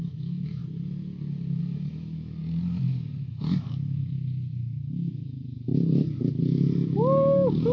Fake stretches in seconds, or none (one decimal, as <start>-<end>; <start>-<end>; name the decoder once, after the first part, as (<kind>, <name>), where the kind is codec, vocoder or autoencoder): 0.0-0.6 (autoencoder, DAC-VAE); 1.6-2.4; 3.2-5.7; 6.3-7.7